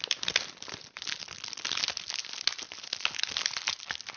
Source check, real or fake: real